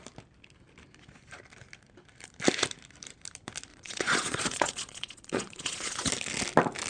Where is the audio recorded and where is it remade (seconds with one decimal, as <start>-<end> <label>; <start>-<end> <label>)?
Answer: 0.0-3.7 recorded; 3.7-6.1 remade; 6.1-6.9 recorded